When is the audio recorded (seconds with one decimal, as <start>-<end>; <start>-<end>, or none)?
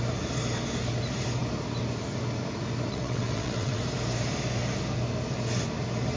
0.0-2.9; 3.8-6.2